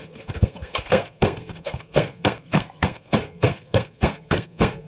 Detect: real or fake fake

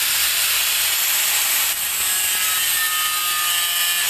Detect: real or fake real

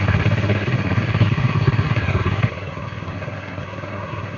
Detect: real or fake fake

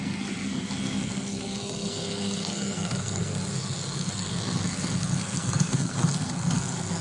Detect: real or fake fake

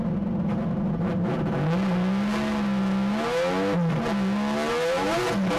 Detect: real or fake real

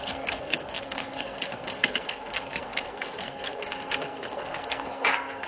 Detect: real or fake fake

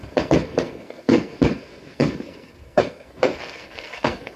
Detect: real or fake fake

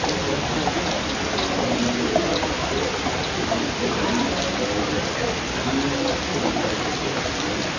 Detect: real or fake real